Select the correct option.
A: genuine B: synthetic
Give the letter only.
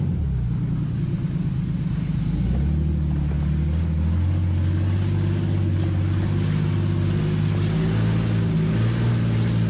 A